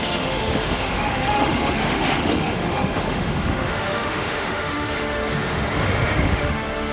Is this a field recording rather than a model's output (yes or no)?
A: no